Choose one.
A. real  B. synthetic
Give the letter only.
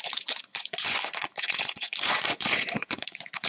B